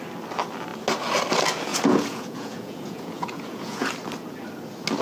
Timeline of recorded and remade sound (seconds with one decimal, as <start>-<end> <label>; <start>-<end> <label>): 0.0-1.7 recorded; 1.7-3.9 remade; 3.9-5.0 recorded